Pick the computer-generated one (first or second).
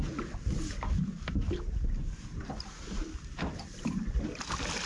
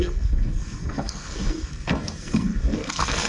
second